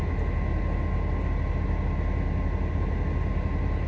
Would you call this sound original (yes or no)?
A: yes